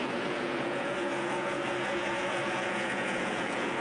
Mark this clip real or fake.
fake